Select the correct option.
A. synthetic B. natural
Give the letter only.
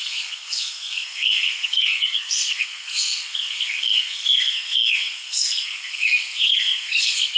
A